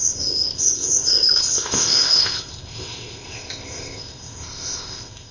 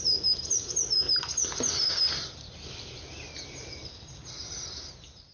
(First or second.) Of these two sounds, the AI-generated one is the first